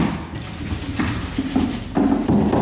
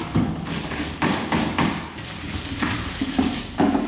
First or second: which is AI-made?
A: second